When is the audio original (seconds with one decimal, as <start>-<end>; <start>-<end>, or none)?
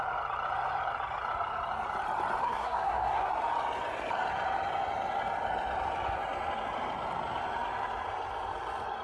0.0-2.4; 3.3-9.0